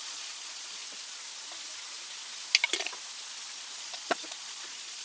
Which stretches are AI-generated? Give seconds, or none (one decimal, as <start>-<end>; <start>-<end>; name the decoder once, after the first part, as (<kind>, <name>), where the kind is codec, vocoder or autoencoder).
0.0-0.8 (vocoder, Vocos); 3.8-5.0

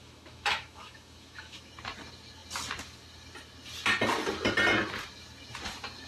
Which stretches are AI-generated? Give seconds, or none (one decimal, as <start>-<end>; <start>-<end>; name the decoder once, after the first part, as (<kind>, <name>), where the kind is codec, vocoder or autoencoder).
0.0-1.7 (autoencoder, DAC-VAE)

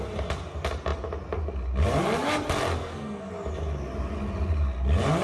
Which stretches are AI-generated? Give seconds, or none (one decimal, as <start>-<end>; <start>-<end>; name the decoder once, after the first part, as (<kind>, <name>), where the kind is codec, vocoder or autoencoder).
2.8-3.3 (codec, SNAC)

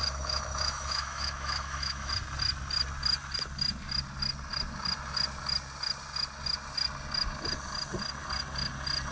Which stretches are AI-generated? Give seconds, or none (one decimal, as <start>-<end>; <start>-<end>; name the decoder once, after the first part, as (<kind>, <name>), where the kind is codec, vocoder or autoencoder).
0.0-2.1 (autoencoder, DAC-VAE)

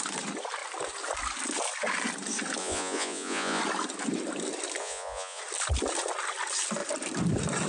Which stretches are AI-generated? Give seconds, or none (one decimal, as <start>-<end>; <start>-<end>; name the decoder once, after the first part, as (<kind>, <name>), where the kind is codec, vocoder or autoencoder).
2.6-3.6 (vocoder, Vocos); 4.8-5.4